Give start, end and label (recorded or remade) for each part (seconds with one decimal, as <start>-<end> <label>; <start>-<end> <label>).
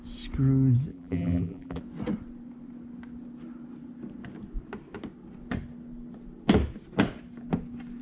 0.0-0.9 recorded; 0.9-1.8 remade; 1.8-8.0 recorded